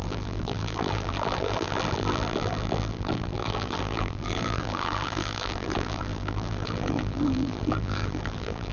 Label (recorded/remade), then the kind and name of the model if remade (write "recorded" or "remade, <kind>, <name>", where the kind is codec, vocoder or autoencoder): remade, vocoder, BigVGAN v2